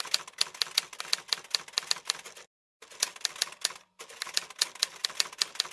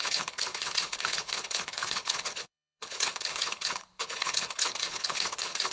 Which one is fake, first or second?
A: second